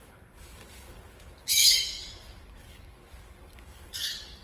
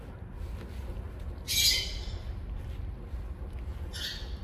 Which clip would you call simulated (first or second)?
first